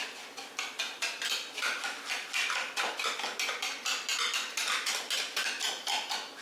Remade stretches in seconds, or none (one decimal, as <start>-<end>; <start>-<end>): none